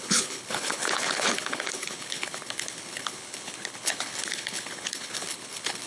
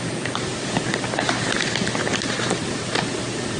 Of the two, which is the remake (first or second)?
first